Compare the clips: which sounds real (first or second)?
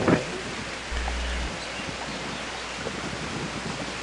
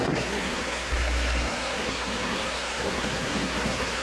first